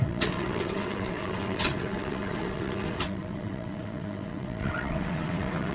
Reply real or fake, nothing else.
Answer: fake